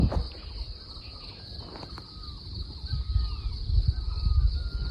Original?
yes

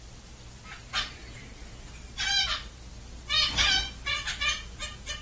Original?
yes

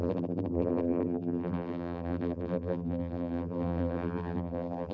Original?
no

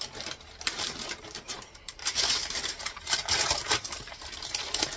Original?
no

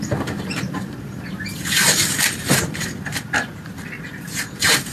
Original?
no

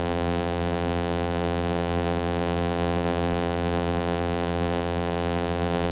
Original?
no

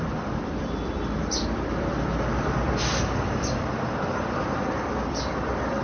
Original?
no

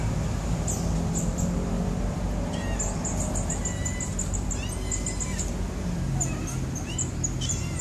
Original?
yes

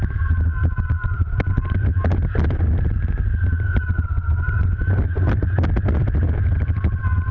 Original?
yes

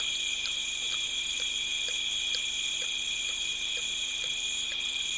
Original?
no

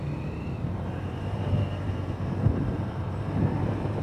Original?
no